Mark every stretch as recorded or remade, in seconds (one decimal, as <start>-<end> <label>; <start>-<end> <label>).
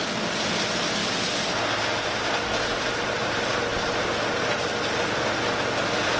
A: 0.0-6.2 recorded